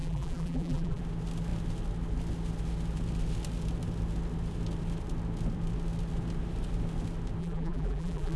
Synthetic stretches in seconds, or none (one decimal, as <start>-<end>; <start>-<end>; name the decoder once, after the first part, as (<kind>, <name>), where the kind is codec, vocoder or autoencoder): 0.0-1.0 (vocoder, BigVGAN v2); 7.4-8.4